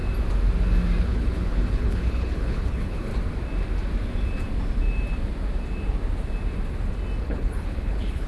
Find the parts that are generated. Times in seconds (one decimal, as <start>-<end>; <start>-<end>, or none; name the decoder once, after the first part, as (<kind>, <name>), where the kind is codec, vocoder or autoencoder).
1.0-3.1 (codec, HILCodec); 7.2-8.3